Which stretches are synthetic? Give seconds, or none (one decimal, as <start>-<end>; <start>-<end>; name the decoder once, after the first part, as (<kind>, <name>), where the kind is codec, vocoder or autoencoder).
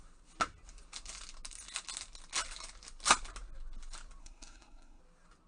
4.2-5.0 (codec, SNAC)